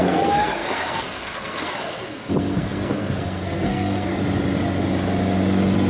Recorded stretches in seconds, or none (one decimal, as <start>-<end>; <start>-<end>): 4.1-5.9

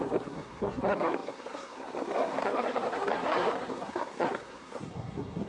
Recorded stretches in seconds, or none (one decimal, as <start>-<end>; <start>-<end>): none

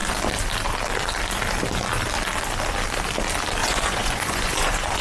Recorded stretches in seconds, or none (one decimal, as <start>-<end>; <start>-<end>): 0.0-3.6

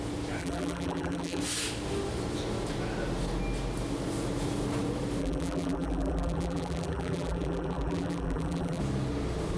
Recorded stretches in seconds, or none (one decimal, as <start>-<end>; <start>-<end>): 0.0-0.4; 1.4-5.2; 8.8-9.6

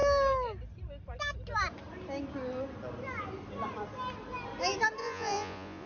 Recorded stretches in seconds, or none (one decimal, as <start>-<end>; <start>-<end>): 0.0-5.0

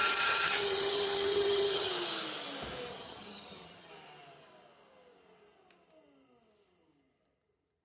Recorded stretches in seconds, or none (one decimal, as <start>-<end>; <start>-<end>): 1.9-2.9; 3.9-7.8